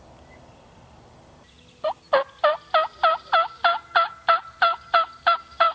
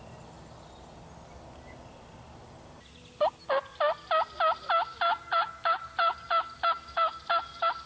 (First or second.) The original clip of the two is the second